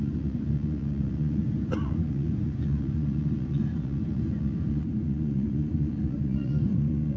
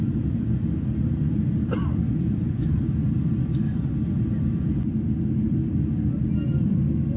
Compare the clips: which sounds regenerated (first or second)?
first